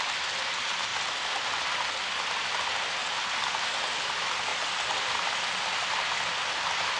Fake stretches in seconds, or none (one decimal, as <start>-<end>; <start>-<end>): 0.9-1.7; 3.0-3.8; 4.5-5.3

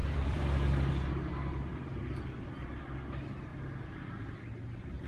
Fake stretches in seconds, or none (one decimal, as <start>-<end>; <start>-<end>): 0.0-0.9

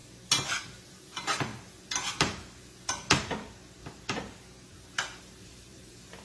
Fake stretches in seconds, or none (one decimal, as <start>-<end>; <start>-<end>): 0.8-1.5; 5.2-6.2

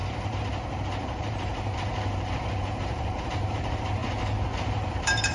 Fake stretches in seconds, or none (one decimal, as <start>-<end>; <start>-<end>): 0.0-4.0; 4.6-5.3

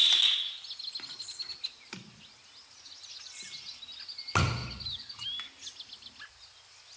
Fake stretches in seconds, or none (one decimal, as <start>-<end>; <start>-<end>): none

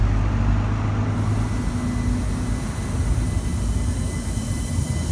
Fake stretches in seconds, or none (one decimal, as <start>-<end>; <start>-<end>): none

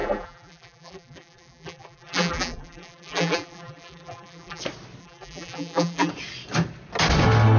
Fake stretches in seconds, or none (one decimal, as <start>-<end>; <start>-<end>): 0.0-4.6; 5.0-6.1